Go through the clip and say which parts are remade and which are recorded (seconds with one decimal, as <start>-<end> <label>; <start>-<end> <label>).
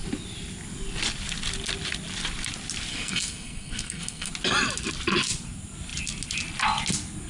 0.0-2.9 recorded; 2.9-4.3 remade; 4.3-7.3 recorded